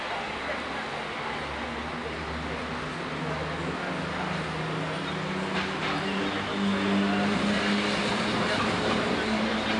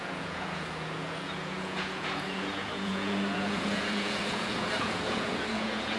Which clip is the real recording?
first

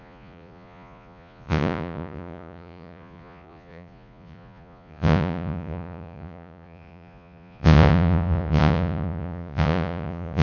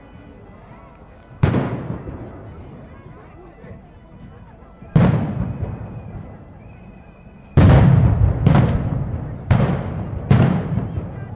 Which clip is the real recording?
second